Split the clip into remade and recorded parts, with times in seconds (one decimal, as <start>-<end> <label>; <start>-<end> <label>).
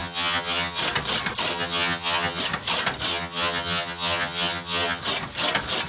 0.0-0.8 remade; 0.8-1.5 recorded; 1.5-2.4 remade; 2.4-3.1 recorded; 3.1-5.0 remade; 5.0-5.9 recorded